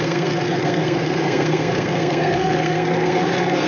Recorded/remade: remade